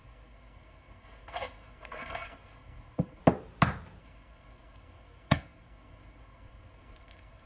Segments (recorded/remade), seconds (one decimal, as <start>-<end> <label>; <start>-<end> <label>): 0.0-3.2 remade; 3.2-4.0 recorded; 4.0-7.5 remade